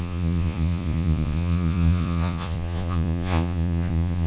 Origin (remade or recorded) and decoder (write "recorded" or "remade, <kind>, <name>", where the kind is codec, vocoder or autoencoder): remade, vocoder, Vocos